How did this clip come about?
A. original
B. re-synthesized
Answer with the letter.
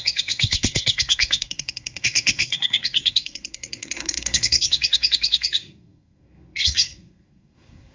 B